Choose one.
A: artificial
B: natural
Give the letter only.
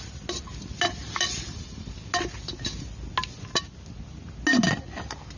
B